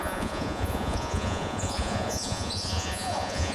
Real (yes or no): no